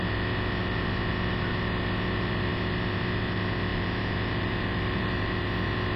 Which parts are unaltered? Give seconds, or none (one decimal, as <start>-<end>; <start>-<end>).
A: 0.0-0.6; 1.1-3.7; 5.3-6.0